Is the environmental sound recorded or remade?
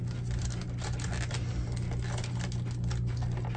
recorded